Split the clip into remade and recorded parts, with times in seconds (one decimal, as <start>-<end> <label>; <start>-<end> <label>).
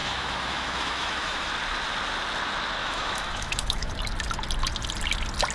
0.0-1.5 remade; 1.5-2.8 recorded; 2.8-3.9 remade; 3.9-5.5 recorded